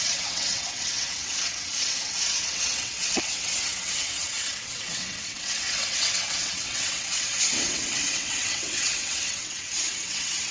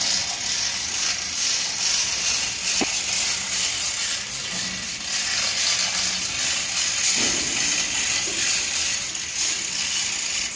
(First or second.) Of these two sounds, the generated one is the first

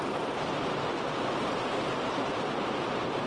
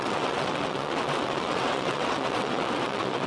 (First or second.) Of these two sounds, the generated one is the second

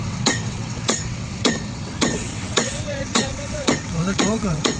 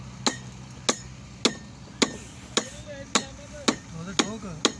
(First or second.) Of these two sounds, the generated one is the first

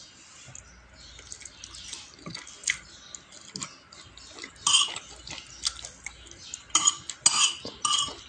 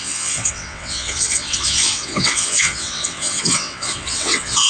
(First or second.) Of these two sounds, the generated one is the second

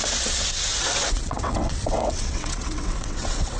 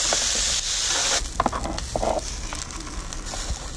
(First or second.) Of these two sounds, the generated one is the first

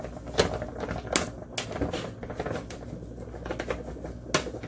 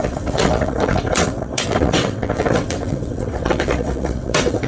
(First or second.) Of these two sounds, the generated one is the second